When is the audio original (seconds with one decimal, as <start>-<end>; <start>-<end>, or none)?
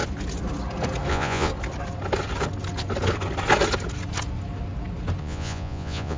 0.0-1.1; 1.5-5.2